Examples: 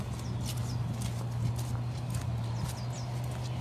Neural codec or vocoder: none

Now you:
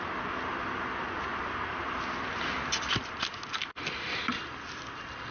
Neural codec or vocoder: none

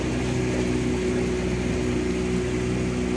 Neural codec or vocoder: none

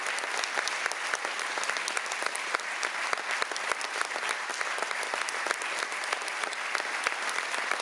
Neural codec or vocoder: none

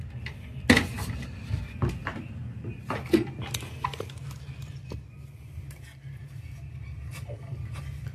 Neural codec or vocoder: none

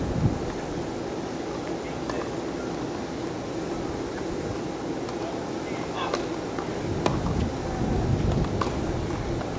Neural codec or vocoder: none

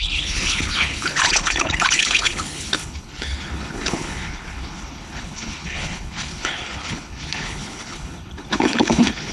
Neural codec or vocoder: codec, HILCodec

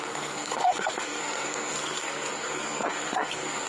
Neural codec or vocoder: codec, SNAC